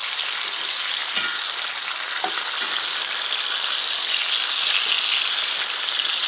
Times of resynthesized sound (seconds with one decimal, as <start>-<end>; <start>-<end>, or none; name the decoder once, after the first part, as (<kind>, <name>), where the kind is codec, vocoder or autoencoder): none